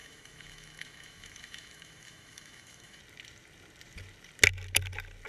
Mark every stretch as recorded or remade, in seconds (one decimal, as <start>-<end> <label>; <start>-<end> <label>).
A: 0.0-3.0 remade; 3.0-5.3 recorded